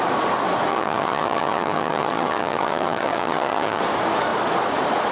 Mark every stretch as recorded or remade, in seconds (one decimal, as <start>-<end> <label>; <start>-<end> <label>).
0.0-0.7 recorded; 0.7-3.8 remade; 3.8-5.1 recorded